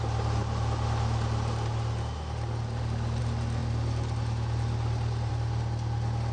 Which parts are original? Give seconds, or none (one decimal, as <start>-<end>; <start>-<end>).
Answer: 0.0-6.3